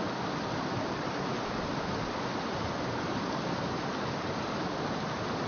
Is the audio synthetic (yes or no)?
no